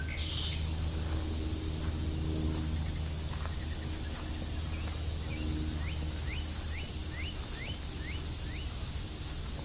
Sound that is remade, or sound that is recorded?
recorded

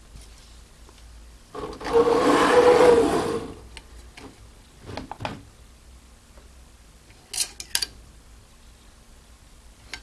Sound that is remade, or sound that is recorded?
recorded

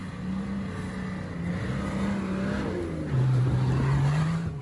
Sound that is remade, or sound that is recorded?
recorded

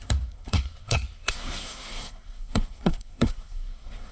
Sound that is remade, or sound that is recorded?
remade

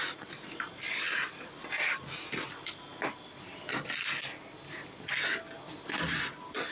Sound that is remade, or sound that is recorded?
recorded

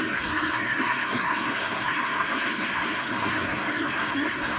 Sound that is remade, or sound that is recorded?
remade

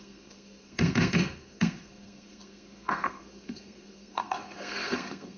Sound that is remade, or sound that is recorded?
remade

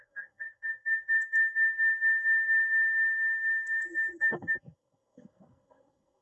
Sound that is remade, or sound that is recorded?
remade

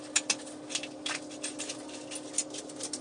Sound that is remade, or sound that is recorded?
recorded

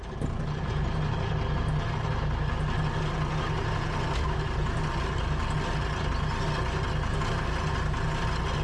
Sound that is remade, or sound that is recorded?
recorded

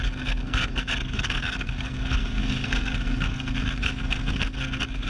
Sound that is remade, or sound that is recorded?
remade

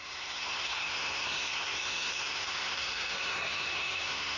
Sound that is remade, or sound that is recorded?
remade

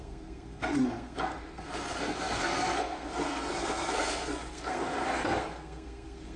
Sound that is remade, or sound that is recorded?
remade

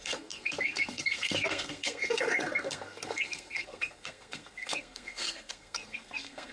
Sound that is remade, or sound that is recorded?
remade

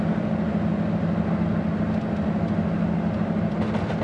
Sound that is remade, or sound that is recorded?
recorded